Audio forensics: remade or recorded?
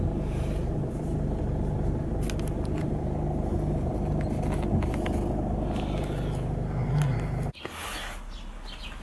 recorded